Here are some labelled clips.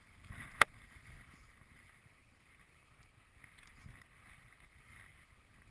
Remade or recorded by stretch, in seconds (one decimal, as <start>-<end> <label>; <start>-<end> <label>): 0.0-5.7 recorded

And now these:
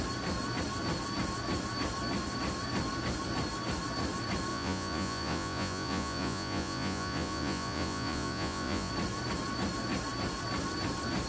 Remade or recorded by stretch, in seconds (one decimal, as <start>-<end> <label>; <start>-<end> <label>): 0.0-4.5 recorded; 4.5-8.9 remade; 8.9-11.3 recorded

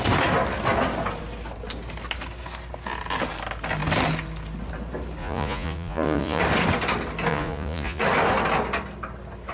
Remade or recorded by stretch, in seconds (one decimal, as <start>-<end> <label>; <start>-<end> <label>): 0.0-5.2 recorded; 5.2-6.4 remade; 6.4-7.3 recorded; 7.3-8.0 remade; 8.0-9.5 recorded

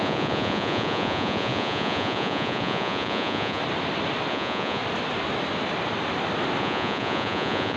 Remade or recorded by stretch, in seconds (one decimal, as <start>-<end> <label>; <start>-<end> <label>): 0.0-3.6 remade; 3.6-4.3 recorded; 4.3-4.8 remade; 4.8-6.6 recorded; 6.6-7.8 remade

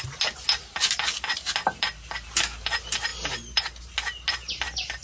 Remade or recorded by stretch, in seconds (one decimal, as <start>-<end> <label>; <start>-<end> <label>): 0.0-5.0 recorded

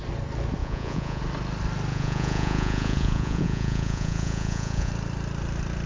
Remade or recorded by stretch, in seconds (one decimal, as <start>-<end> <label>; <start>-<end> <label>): 0.0-0.6 recorded; 0.6-1.2 remade; 1.2-1.9 recorded; 1.9-4.9 remade; 4.9-5.9 recorded

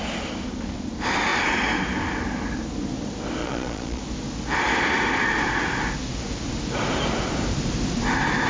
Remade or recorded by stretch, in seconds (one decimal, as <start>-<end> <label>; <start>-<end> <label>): 0.0-3.4 recorded; 3.4-4.0 remade; 4.0-8.5 recorded